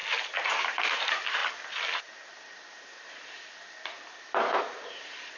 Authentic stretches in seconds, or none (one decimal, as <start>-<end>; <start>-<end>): 0.0-0.6; 1.4-4.6